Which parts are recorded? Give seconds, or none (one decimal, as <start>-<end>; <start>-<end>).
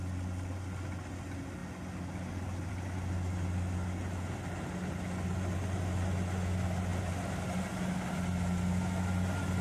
0.0-1.6; 2.7-6.9; 7.6-9.6